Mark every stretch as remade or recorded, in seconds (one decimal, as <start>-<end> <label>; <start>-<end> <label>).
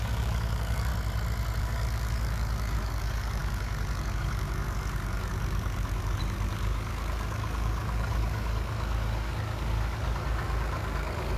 0.0-0.9 remade; 0.9-1.6 recorded; 1.6-11.4 remade